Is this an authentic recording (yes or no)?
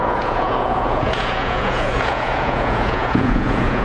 no